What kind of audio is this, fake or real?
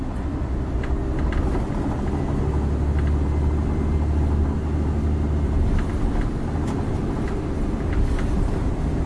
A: real